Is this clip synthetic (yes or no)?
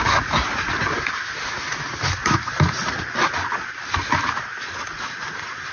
no